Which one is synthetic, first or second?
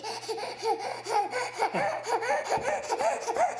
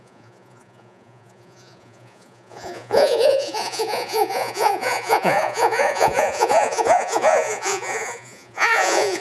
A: second